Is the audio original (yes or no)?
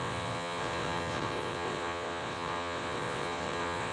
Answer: no